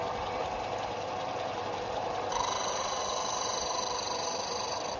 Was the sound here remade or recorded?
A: recorded